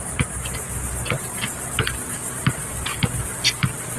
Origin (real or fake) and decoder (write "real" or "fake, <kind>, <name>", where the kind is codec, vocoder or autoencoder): real